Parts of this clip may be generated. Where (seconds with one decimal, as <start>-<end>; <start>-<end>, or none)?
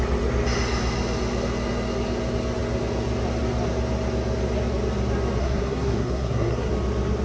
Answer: 5.4-6.7